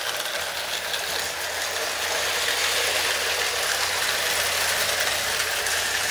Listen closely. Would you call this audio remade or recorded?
recorded